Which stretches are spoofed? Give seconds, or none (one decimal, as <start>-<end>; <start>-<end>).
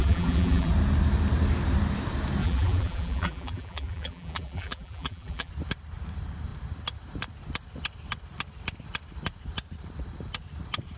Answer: 0.0-0.7; 2.4-5.5